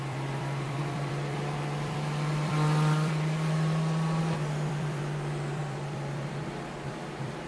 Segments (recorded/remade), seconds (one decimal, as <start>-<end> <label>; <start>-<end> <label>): 0.0-7.5 remade